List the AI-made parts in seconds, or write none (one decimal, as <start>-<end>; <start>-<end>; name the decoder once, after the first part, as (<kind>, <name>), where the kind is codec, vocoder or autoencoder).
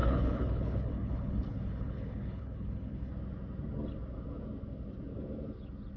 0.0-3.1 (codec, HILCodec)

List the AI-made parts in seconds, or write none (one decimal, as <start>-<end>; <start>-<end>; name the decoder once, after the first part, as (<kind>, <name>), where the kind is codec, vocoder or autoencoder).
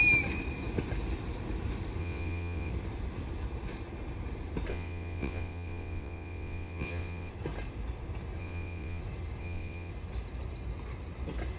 2.0-2.7 (vocoder, WaveNeXt); 4.7-7.3; 8.4-9.0; 9.4-9.9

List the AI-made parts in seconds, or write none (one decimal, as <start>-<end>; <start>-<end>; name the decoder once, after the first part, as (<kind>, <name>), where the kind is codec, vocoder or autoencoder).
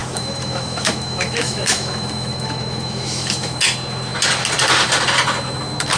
0.0-3.6 (autoencoder, DAC-VAE)